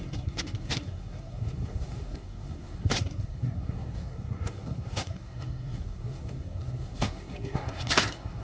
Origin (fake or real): fake